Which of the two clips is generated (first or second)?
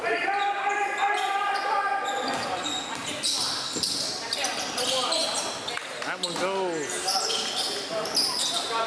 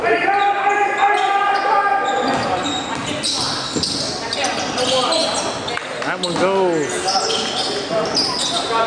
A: first